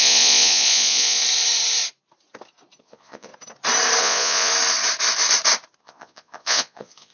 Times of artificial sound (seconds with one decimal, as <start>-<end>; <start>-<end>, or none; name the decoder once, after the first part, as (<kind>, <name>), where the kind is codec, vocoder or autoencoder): 0.0-1.2 (vocoder, Vocos); 2.8-3.3; 4.0-4.5; 5.8-7.1